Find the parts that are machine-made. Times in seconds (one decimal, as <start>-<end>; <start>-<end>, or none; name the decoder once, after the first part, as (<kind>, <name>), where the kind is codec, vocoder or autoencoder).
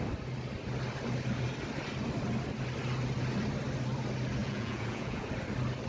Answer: 4.4-5.3 (vocoder, Vocos)